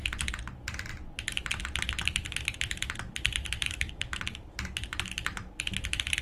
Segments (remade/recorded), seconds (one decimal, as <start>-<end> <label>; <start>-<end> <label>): 0.0-3.6 recorded; 3.6-4.2 remade; 4.2-6.2 recorded